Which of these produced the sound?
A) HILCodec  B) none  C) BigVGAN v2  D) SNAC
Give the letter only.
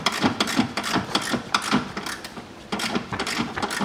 C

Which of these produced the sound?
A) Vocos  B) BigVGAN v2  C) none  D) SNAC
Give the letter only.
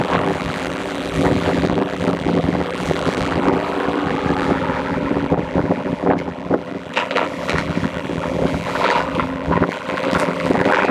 B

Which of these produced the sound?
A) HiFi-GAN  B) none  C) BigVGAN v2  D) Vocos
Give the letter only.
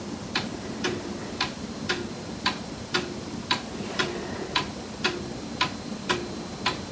B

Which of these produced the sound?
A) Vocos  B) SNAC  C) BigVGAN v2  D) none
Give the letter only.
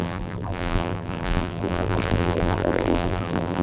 C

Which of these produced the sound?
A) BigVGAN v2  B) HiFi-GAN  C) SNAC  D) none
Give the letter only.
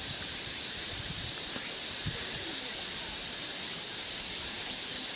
A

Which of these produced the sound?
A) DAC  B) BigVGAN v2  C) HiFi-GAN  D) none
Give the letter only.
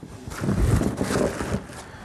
D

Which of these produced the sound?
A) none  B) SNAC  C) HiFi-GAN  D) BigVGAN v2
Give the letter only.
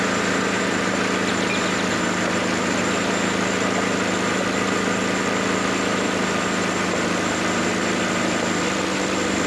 A